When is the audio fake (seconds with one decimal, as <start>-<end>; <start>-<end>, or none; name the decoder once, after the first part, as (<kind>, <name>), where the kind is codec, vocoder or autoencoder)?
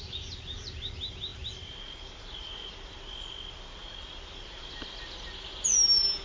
none